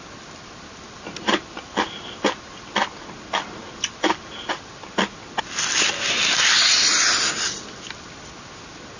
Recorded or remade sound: recorded